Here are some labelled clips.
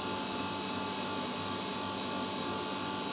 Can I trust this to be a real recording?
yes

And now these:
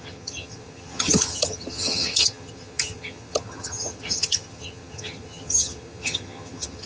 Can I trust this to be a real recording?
no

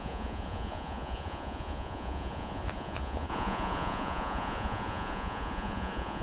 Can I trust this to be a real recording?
no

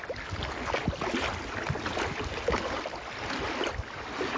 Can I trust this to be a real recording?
yes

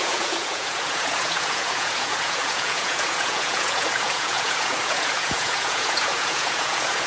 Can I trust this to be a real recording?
no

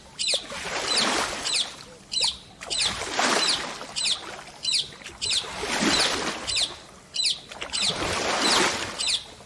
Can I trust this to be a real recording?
yes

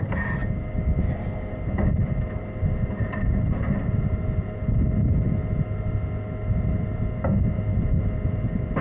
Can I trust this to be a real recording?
yes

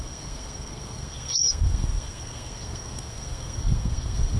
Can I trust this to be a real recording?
no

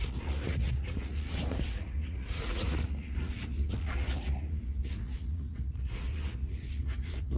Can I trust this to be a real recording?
no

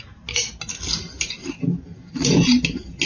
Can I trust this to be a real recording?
yes